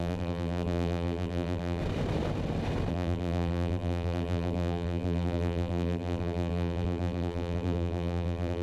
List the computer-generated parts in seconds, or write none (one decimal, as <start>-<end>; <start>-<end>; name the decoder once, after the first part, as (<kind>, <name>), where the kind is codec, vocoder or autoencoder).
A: 0.0-1.8 (vocoder, BigVGAN v2); 2.9-8.6